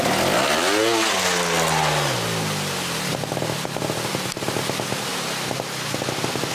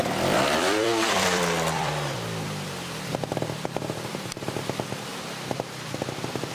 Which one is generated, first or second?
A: second